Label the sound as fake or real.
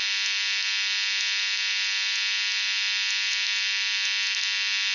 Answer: real